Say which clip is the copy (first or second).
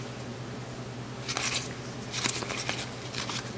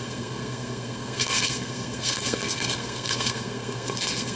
second